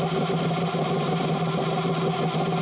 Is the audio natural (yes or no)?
yes